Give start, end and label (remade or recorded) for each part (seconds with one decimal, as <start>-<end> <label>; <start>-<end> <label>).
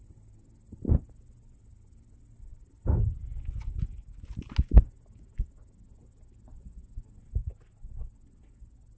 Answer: 0.0-9.0 recorded